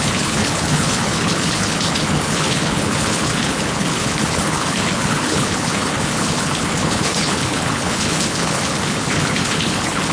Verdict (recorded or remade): remade